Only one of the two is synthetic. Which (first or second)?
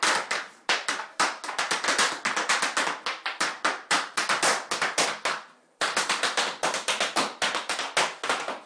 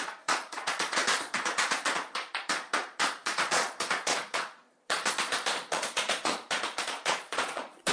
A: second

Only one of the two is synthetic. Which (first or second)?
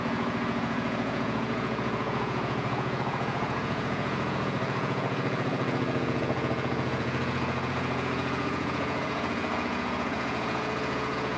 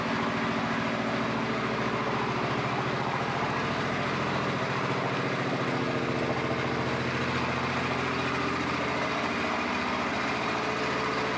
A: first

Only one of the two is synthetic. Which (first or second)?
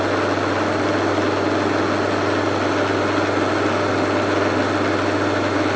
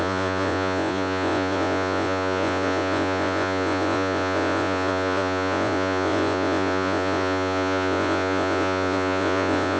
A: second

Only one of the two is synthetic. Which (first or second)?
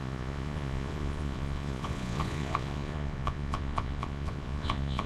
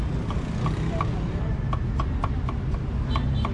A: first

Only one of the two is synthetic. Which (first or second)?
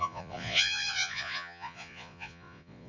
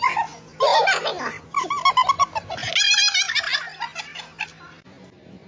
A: first